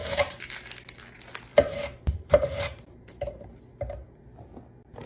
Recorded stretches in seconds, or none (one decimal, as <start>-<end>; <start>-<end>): 0.5-1.5; 3.6-5.1